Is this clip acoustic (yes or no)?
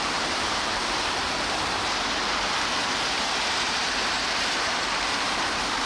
no